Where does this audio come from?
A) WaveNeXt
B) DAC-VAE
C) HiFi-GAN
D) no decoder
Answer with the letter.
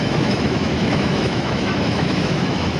B